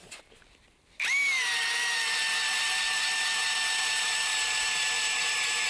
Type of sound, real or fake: real